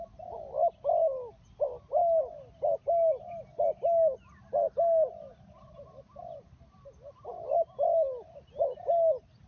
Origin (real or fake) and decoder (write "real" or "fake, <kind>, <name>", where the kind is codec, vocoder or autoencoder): real